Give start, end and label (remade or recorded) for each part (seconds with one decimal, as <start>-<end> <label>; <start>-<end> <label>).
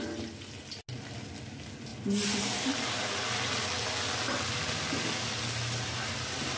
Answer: 0.0-6.6 recorded